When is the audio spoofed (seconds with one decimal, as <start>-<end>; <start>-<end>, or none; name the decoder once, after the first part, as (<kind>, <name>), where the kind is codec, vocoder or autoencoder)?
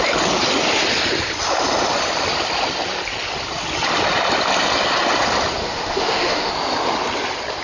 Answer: 5.6-6.5 (autoencoder, DAC-VAE)